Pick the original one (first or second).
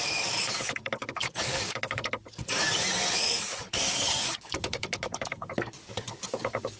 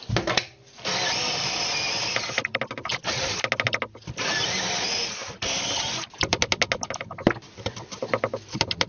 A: second